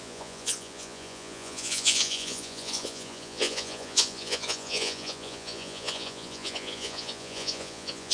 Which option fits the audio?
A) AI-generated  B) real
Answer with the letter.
A